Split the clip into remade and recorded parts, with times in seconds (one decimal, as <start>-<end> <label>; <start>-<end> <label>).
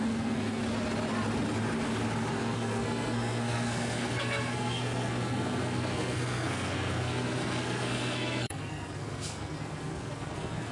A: 0.0-0.6 remade; 0.6-2.3 recorded; 2.3-10.7 remade